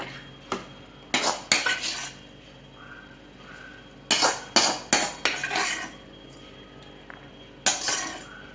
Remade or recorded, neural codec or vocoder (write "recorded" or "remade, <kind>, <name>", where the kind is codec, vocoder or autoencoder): recorded